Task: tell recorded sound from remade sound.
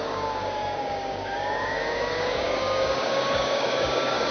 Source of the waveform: remade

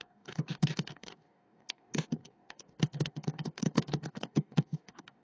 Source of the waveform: remade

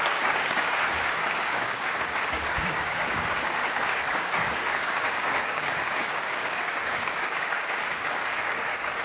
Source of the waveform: remade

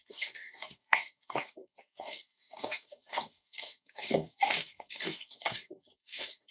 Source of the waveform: remade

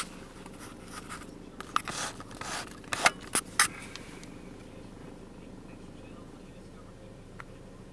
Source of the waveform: recorded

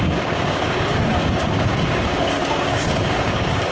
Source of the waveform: remade